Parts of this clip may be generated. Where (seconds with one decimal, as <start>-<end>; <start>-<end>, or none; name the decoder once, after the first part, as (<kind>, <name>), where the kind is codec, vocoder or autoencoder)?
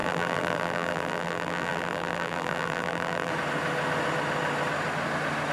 0.0-3.3 (vocoder, BigVGAN v2)